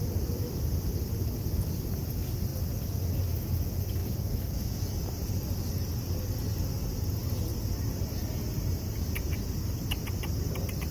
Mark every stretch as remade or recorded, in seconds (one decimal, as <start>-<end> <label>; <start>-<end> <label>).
0.0-4.0 recorded; 4.0-5.0 remade; 5.0-10.9 recorded